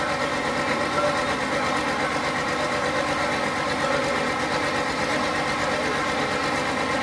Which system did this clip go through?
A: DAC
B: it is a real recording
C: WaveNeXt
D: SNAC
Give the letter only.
B